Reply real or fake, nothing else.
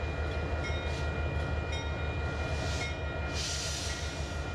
real